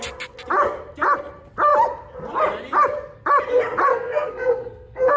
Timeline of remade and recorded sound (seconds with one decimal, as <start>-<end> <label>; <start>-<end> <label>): 0.0-3.9 recorded; 3.9-5.2 remade